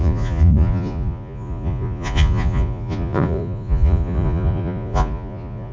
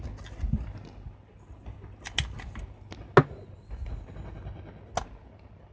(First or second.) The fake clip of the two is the first